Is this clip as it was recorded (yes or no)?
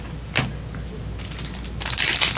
yes